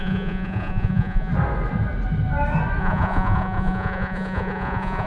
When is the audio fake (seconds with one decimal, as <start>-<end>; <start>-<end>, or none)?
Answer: 0.0-1.3; 2.8-5.1